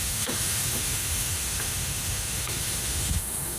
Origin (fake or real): fake